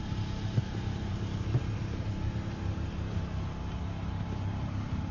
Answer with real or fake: fake